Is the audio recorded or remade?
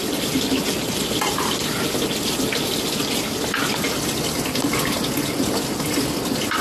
recorded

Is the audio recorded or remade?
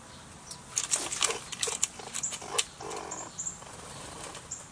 recorded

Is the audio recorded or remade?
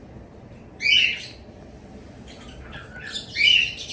recorded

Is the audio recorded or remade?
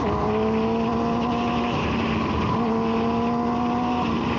recorded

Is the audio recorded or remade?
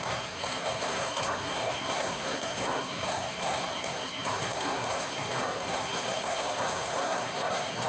remade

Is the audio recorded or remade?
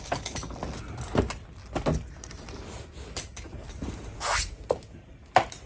recorded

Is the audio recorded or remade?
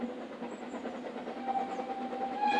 recorded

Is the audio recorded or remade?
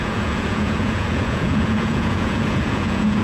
remade